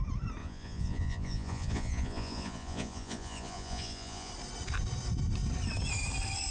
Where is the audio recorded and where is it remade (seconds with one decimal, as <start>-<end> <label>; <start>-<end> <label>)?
0.0-0.4 recorded; 0.4-4.3 remade; 4.3-6.5 recorded